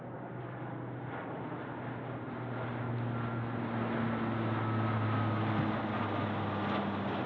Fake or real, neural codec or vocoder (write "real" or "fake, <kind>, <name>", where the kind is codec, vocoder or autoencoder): real